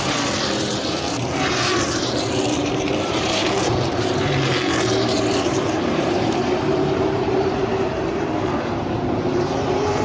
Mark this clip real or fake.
fake